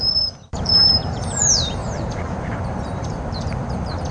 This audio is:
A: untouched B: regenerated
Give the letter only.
B